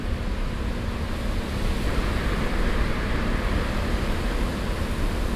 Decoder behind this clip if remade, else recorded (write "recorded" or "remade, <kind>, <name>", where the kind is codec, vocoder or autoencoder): recorded